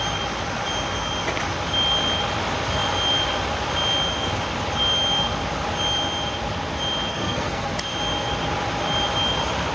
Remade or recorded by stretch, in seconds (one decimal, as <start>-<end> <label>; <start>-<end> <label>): 0.0-7.1 recorded; 7.1-7.7 remade; 7.7-9.7 recorded